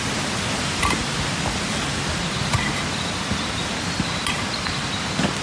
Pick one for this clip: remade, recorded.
recorded